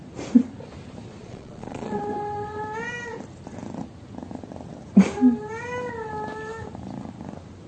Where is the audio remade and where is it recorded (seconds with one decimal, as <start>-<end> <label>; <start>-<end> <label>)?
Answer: 0.0-1.2 recorded; 1.2-2.0 remade; 2.0-7.7 recorded